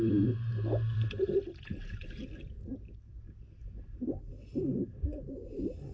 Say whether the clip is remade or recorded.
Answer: remade